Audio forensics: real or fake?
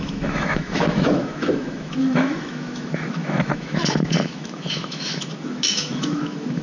fake